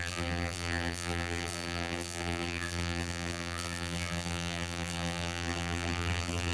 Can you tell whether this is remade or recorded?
remade